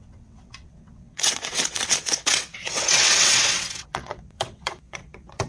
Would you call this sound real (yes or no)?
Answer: no